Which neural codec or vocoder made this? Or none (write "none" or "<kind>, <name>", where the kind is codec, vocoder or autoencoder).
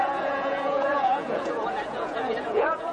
vocoder, Vocos